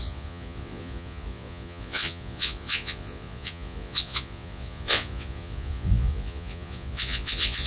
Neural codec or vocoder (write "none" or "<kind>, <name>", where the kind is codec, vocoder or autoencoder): vocoder, Vocos